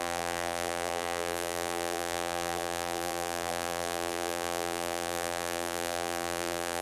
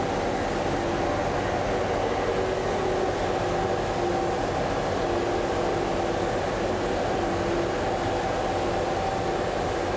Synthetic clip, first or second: first